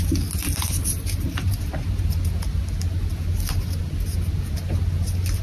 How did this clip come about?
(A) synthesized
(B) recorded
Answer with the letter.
B